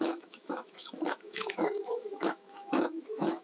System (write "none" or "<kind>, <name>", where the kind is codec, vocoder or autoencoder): autoencoder, DAC-VAE